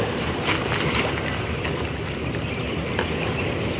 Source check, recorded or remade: recorded